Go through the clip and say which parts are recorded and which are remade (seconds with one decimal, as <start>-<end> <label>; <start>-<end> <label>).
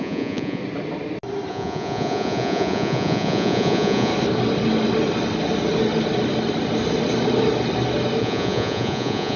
0.0-0.6 remade; 0.6-1.5 recorded; 1.5-4.1 remade; 4.1-8.2 recorded; 8.2-9.4 remade